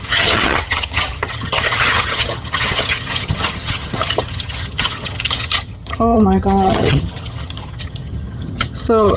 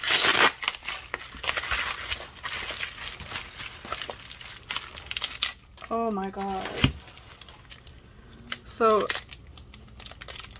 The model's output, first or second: first